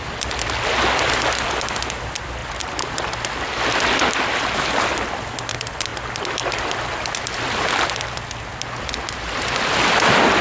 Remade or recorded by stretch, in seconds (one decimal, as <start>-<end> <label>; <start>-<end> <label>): 0.0-10.4 recorded